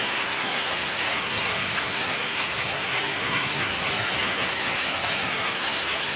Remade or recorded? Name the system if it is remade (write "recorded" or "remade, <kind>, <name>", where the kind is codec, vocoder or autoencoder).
remade, codec, SNAC